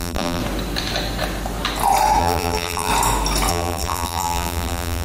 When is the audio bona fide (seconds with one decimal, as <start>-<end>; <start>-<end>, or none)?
0.4-2.2; 2.9-3.5